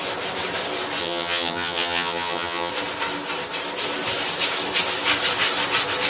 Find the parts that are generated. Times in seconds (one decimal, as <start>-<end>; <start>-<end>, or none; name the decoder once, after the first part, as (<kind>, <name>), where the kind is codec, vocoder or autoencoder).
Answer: 1.0-2.7 (vocoder, HiFi-GAN)